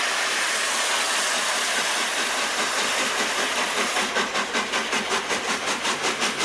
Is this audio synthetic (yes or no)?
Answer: no